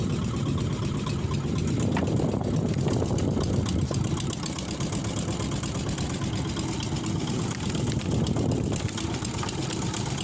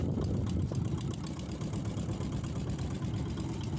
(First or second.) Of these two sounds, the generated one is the second